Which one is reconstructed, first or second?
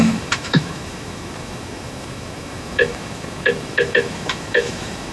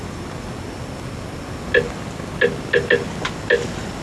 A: first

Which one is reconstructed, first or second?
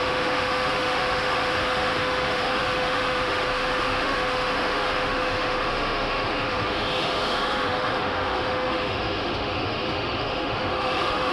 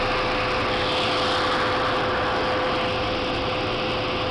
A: first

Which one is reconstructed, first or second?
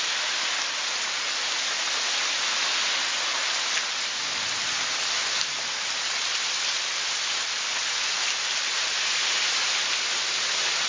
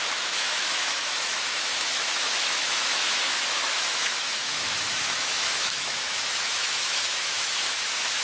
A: second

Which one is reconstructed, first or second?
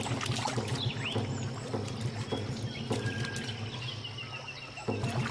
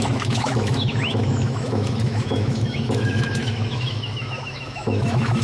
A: second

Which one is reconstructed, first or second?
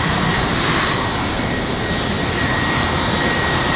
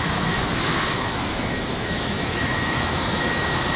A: second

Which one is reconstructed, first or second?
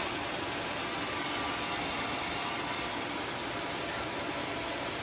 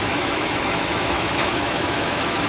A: second